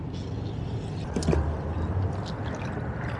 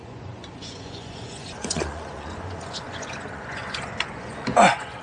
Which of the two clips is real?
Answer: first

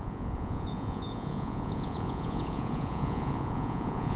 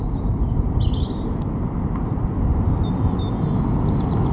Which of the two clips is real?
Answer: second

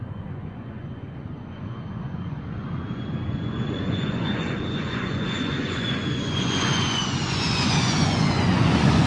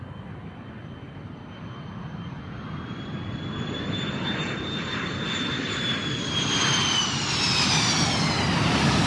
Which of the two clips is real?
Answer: second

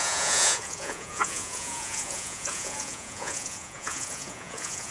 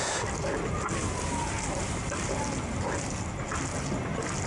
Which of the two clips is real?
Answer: second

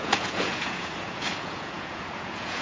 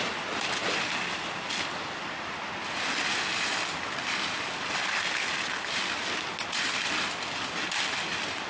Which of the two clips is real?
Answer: second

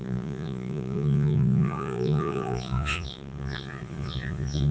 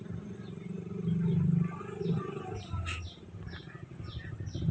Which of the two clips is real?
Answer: second